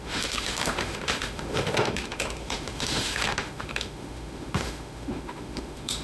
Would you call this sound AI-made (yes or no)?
yes